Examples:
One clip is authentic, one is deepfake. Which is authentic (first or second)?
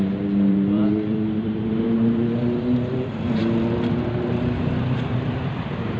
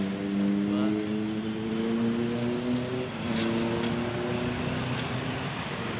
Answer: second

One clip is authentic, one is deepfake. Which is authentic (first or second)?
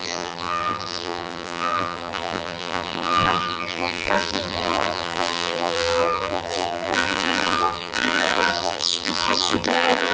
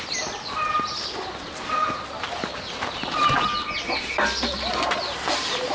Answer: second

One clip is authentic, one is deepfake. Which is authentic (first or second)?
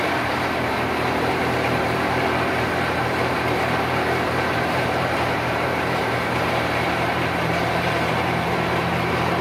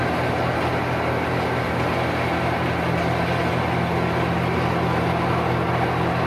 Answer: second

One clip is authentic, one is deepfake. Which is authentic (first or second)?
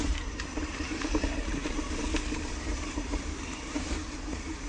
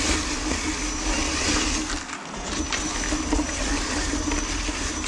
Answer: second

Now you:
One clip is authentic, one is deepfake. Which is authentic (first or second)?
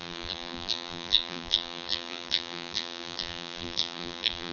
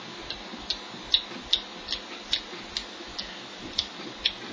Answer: second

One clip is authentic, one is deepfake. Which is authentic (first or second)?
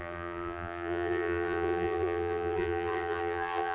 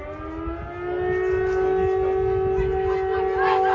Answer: second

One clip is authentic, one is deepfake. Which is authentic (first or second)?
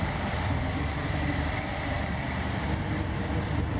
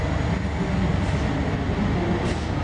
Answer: second